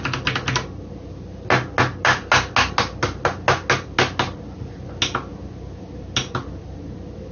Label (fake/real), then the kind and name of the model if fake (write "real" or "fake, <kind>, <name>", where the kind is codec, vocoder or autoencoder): real